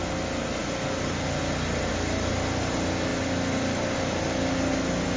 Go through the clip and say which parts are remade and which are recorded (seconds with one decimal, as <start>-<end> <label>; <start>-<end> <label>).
0.0-5.2 recorded